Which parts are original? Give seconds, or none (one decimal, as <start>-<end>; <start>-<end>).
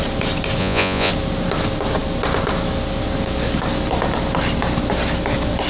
0.0-0.6; 1.1-5.7